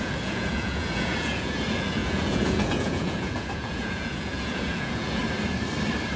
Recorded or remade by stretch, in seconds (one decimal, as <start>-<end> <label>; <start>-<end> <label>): 0.0-5.2 remade; 5.2-6.2 recorded